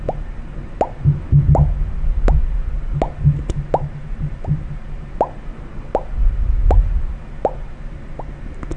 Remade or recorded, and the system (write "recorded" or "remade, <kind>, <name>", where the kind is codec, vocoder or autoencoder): recorded